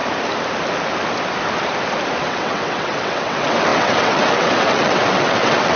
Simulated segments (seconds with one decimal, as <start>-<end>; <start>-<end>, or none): 2.2-5.8